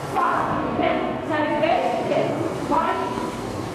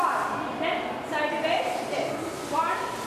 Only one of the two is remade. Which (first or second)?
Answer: first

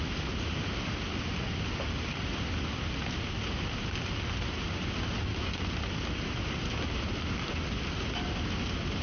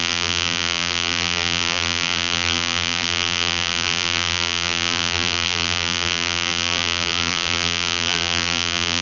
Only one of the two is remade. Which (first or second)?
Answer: second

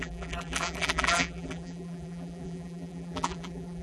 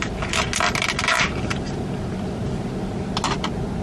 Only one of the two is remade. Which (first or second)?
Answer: first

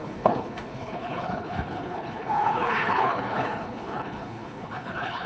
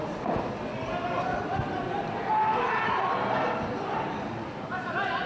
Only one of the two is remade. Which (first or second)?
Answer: first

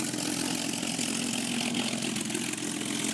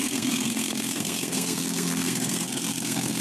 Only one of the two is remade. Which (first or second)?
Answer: second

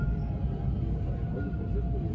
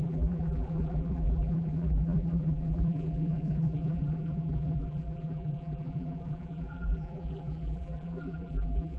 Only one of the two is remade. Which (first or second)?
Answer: second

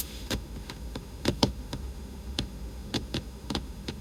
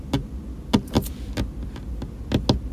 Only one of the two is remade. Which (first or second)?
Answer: first